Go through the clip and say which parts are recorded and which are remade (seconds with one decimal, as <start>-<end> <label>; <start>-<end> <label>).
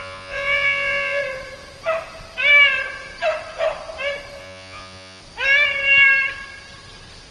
0.0-1.2 remade; 1.2-4.4 recorded; 4.4-5.2 remade; 5.2-7.3 recorded